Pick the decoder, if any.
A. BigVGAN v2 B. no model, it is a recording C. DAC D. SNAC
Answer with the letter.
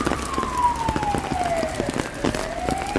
B